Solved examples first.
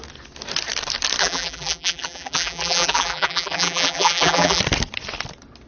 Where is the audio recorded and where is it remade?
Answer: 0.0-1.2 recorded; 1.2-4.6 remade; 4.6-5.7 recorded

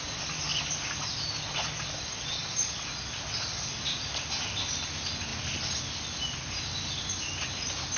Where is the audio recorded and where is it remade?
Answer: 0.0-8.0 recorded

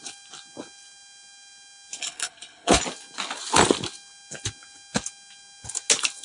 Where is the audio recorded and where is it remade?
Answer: 0.0-2.0 recorded; 2.0-2.8 remade; 2.8-6.2 recorded

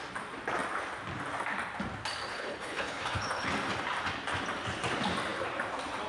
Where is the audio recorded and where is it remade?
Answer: 0.0-2.3 recorded; 2.3-3.5 remade; 3.5-6.1 recorded

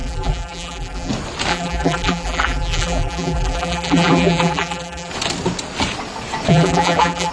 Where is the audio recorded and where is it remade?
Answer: 0.0-1.1 remade; 1.1-1.5 recorded; 1.5-5.1 remade; 5.1-6.5 recorded; 6.5-7.3 remade

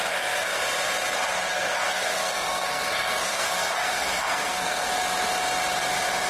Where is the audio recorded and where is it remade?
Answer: 0.0-0.6 remade; 0.6-1.5 recorded; 1.5-4.9 remade; 4.9-6.3 recorded